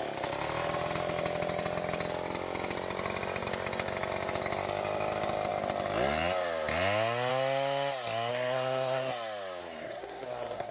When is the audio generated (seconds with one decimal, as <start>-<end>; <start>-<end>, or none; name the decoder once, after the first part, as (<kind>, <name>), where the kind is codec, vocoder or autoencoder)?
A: 8.3-9.1 (codec, SNAC); 9.6-10.7